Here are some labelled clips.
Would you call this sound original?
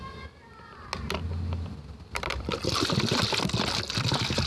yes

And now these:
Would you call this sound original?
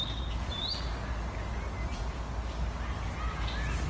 yes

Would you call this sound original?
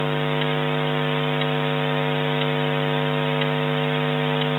yes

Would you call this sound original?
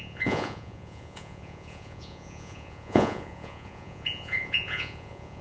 no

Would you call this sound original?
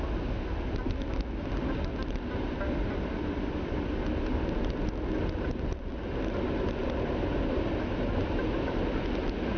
yes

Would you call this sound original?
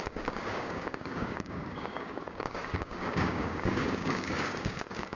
no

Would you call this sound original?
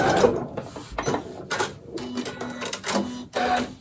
yes